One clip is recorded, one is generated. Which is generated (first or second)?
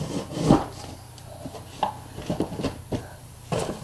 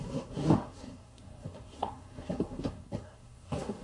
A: second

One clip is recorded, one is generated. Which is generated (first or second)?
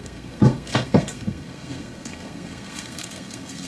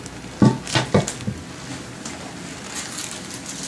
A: first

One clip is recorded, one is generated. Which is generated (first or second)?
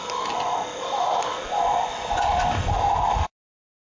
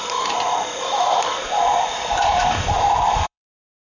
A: second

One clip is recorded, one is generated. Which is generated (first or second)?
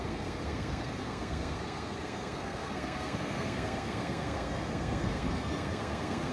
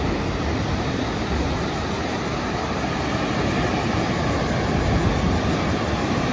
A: first